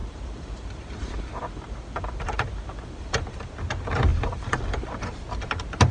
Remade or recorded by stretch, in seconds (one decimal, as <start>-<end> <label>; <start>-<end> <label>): 0.0-3.5 remade; 3.5-4.1 recorded; 4.1-5.0 remade; 5.0-5.9 recorded